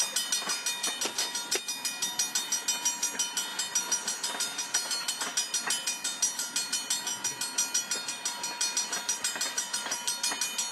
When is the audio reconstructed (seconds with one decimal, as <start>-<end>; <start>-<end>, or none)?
none